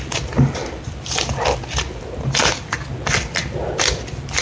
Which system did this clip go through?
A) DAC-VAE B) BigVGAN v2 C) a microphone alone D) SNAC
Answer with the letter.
C